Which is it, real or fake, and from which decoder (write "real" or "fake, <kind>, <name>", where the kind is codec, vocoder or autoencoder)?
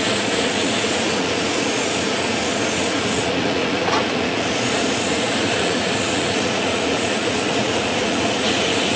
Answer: fake, vocoder, Vocos